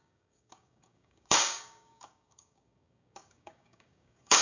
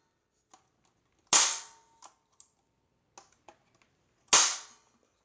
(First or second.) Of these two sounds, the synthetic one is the first